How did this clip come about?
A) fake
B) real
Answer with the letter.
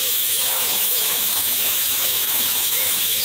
A